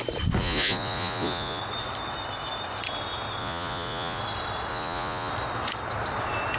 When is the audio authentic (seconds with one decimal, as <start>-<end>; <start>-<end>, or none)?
0.0-0.4; 1.6-3.4; 4.2-4.7; 5.3-6.6